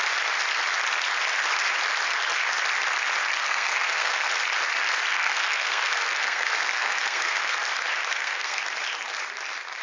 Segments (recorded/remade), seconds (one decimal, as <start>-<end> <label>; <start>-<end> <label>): 0.0-3.4 recorded; 3.4-4.3 remade; 4.3-5.1 recorded; 5.1-7.6 remade; 7.6-8.1 recorded; 8.1-8.6 remade; 8.6-9.8 recorded